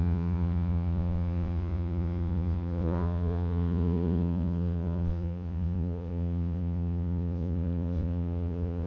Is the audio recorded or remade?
remade